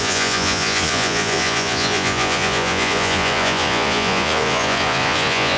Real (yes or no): no